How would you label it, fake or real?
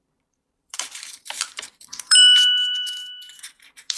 fake